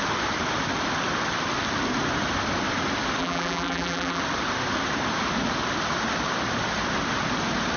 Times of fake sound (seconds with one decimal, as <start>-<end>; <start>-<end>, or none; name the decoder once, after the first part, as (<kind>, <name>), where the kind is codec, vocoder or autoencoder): 3.2-4.2 (vocoder, BigVGAN v2)

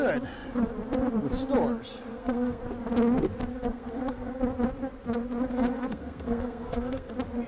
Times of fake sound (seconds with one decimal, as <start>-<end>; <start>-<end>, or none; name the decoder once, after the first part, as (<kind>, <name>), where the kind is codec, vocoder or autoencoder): 2.1-2.6 (codec, SNAC); 3.5-4.4; 5.5-7.1

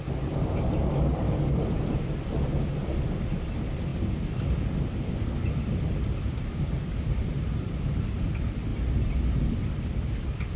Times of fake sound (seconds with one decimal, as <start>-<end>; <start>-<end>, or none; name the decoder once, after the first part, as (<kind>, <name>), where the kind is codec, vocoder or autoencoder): 0.0-3.9 (vocoder, BigVGAN v2); 4.9-8.7; 9.4-10.6

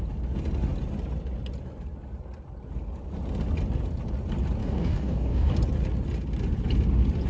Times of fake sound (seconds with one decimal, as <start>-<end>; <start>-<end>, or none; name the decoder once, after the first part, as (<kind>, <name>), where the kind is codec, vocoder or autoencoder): 4.6-5.5 (codec, DAC)

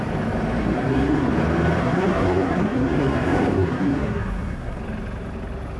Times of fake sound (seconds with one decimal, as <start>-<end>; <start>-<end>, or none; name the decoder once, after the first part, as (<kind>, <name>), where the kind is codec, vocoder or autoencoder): 0.6-1.3 (codec, SNAC); 1.8-4.8

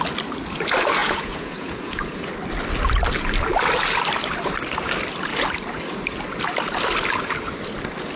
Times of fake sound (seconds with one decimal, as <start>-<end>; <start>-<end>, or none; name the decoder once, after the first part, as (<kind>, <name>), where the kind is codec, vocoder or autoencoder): 1.0-2.2 (vocoder, Vocos)

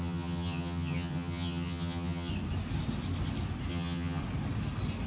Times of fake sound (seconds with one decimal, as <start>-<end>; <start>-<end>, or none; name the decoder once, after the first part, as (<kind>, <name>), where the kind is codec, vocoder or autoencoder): 0.0-2.3 (vocoder, HiFi-GAN); 3.7-4.2

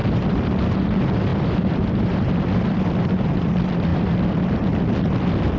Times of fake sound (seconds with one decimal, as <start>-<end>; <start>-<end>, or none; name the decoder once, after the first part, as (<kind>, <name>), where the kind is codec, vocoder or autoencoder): 0.0-0.6 (vocoder, BigVGAN v2); 1.3-3.5; 3.9-4.8